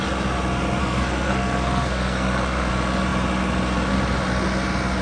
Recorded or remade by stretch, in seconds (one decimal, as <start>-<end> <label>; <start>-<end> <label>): 0.0-0.8 recorded; 0.8-2.7 remade; 2.7-5.0 recorded